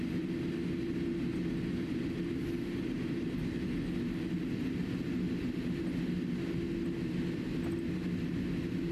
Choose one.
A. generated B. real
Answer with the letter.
B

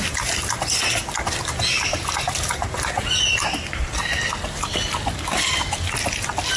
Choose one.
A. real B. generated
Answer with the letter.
A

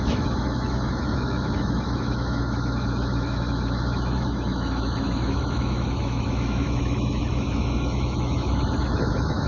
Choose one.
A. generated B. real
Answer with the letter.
A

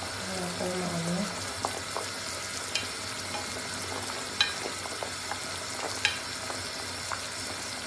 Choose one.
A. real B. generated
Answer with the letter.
A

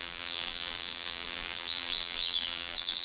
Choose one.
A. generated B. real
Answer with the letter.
A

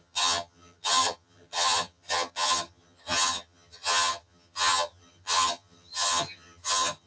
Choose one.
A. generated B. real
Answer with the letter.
A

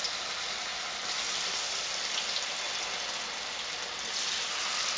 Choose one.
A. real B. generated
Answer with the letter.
A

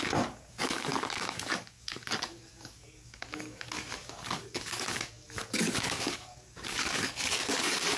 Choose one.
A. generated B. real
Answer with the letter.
A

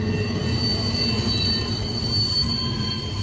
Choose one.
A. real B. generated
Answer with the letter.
A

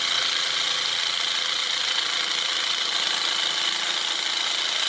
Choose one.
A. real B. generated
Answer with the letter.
A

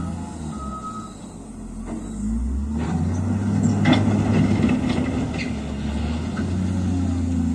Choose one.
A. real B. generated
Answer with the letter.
A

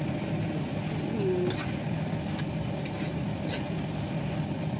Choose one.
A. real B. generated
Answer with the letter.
A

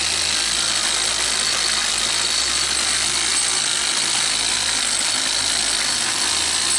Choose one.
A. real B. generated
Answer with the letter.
A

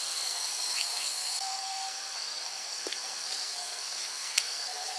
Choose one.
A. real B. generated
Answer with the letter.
B